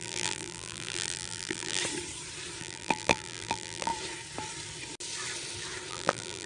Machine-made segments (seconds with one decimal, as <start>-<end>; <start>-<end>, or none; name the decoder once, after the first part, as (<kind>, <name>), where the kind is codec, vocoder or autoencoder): 0.0-1.8 (vocoder, BigVGAN v2); 2.6-3.9; 5.9-6.5